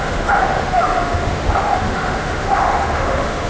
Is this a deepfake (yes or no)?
yes